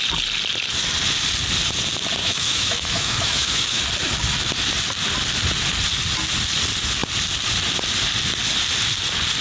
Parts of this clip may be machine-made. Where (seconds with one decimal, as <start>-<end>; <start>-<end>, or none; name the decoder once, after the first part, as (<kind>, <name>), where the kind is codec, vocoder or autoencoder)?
2.2-3.8 (autoencoder, DAC-VAE)